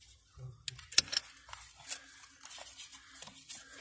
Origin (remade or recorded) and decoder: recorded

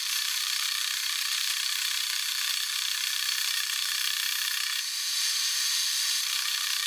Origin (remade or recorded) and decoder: remade, vocoder, BigVGAN v2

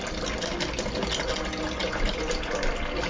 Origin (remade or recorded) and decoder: recorded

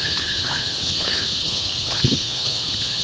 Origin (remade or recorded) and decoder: remade, codec, HILCodec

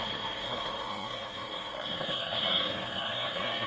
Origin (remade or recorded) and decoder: remade, codec, SNAC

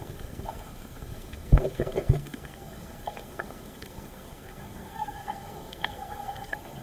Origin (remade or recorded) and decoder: remade, codec, SNAC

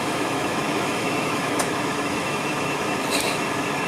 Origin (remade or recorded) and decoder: remade, autoencoder, DAC-VAE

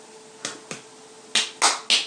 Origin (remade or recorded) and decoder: recorded